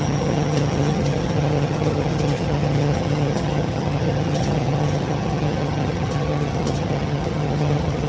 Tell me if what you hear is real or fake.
fake